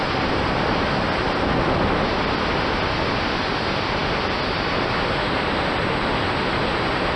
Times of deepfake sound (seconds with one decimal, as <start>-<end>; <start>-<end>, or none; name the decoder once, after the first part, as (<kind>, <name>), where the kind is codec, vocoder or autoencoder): none